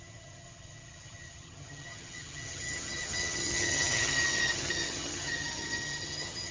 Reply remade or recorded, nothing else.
remade